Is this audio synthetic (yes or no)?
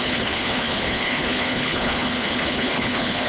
yes